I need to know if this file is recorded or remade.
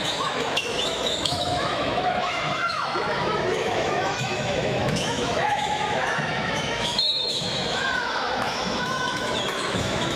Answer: remade